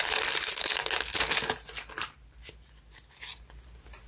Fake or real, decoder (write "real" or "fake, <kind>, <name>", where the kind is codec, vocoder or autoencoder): real